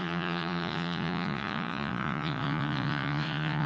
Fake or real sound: fake